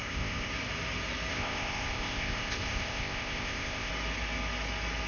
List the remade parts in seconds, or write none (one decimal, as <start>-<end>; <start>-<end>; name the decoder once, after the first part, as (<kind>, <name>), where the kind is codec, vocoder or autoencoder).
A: 0.0-0.5 (codec, ZipCodec); 1.3-3.9

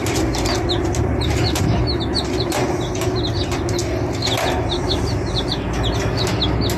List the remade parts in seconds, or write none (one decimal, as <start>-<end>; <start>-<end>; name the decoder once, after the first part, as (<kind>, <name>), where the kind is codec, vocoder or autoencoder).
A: none

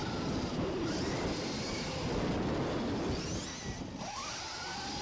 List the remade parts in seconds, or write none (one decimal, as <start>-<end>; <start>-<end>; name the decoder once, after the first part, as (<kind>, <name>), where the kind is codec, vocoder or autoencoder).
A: none

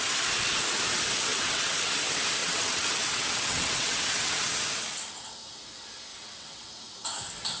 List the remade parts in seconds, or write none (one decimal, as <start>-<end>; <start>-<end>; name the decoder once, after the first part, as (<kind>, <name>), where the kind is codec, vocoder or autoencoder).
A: 1.3-1.9 (vocoder, WaveNeXt); 2.4-4.5; 6.1-6.7